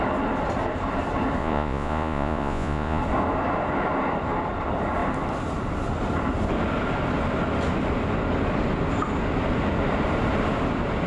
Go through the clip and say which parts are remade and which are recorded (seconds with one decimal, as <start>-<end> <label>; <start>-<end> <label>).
0.0-1.4 recorded; 1.4-3.0 remade; 3.0-11.1 recorded